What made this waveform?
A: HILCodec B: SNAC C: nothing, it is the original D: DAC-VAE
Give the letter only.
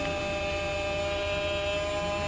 C